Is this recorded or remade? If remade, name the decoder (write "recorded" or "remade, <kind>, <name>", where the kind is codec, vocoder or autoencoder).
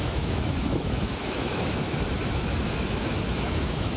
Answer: remade, autoencoder, DAC-VAE